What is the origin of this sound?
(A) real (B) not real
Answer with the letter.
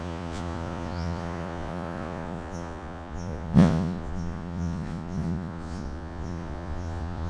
B